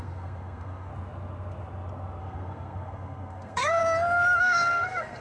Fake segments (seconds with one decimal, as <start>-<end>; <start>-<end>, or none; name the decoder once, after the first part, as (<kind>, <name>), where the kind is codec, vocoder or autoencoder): 0.0-0.9 (codec, SNAC); 2.2-3.8; 4.4-5.2